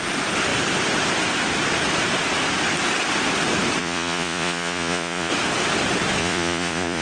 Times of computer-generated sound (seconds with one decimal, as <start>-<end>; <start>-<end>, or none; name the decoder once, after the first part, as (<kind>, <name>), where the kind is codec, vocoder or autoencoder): 3.8-5.3 (vocoder, Vocos); 6.2-7.0